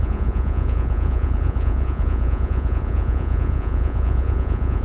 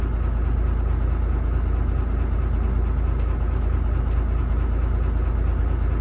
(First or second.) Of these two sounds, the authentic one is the second